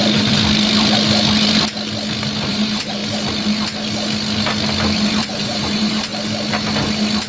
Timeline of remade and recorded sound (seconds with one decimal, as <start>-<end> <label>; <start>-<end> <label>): 0.0-0.4 remade; 0.4-2.5 recorded; 2.5-3.0 remade; 3.0-5.3 recorded; 5.3-6.1 remade; 6.1-7.3 recorded